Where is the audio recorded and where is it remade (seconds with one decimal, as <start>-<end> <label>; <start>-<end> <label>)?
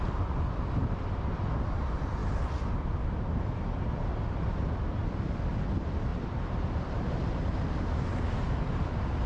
0.0-6.1 recorded; 6.1-9.3 remade